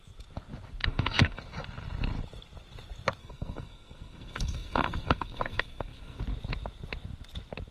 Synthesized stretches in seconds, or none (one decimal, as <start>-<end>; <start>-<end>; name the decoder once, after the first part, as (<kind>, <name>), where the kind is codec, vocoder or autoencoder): 0.8-1.4 (codec, SNAC); 3.2-6.2